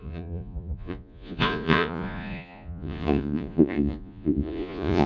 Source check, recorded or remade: remade